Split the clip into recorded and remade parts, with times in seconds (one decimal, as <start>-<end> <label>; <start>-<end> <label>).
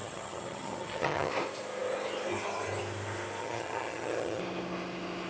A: 0.0-1.3 remade; 1.3-3.4 recorded; 3.4-4.4 remade; 4.4-5.3 recorded